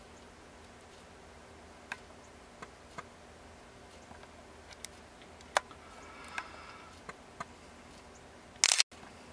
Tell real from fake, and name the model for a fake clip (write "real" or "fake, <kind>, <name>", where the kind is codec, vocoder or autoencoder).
real